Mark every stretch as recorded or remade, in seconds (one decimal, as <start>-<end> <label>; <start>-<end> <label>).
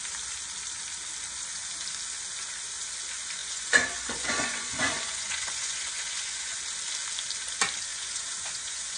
0.0-3.4 recorded; 3.4-6.6 remade; 6.6-7.9 recorded; 7.9-9.0 remade